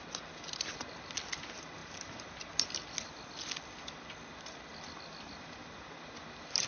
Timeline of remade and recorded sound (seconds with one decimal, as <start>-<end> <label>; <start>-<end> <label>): 0.0-6.7 recorded